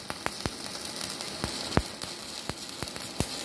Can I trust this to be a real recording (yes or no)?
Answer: yes